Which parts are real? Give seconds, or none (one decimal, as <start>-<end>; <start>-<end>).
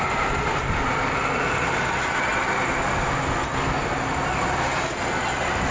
0.0-5.7